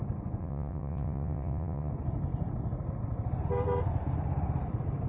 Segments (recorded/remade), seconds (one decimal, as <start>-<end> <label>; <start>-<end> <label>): 0.0-0.4 recorded; 0.4-1.9 remade; 1.9-5.1 recorded